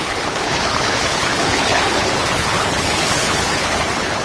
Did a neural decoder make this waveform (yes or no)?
yes